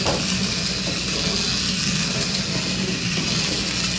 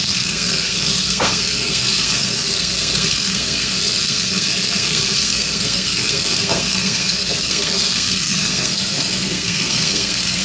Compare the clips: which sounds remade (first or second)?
second